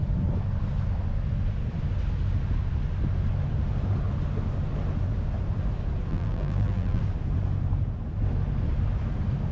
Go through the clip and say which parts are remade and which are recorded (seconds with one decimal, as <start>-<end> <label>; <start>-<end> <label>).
0.0-6.1 recorded; 6.1-7.0 remade; 7.0-9.5 recorded